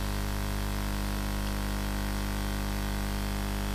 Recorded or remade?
recorded